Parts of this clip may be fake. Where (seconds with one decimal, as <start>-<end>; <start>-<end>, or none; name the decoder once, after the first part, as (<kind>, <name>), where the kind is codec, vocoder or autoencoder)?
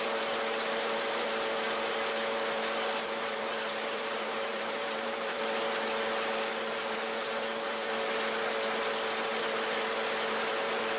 3.0-5.4 (vocoder, BigVGAN v2); 6.5-7.9